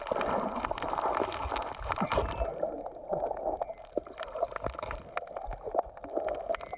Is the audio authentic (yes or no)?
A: yes